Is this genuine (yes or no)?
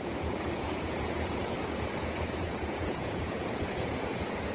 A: no